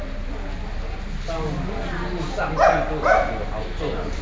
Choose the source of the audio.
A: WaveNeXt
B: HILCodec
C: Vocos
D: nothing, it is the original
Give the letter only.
D